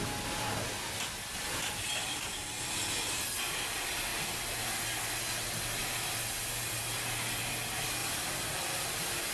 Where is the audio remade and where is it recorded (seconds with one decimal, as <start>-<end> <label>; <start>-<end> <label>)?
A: 0.0-1.3 recorded; 1.3-2.5 remade; 2.5-8.0 recorded; 8.0-9.3 remade